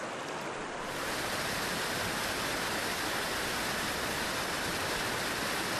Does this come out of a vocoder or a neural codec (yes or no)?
no